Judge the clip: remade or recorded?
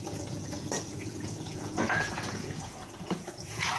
remade